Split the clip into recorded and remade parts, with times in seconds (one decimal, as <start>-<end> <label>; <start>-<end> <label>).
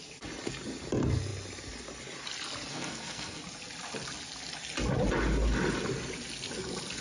0.0-2.7 recorded; 2.7-3.4 remade; 3.4-7.0 recorded